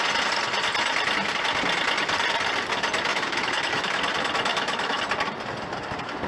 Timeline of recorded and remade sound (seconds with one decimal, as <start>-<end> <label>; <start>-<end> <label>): 0.0-3.1 recorded; 3.1-4.0 remade; 4.0-4.5 recorded; 4.5-5.0 remade; 5.0-6.3 recorded